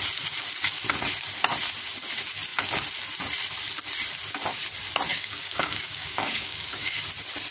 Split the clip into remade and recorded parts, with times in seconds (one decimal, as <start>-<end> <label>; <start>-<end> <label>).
0.0-5.1 recorded; 5.1-7.0 remade; 7.0-7.5 recorded